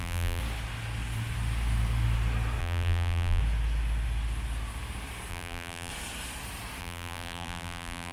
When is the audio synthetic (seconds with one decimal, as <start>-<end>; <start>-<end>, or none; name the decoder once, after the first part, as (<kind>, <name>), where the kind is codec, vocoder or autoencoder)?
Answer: 0.0-0.4 (vocoder, BigVGAN v2); 2.6-3.4; 5.3-5.9; 6.8-8.1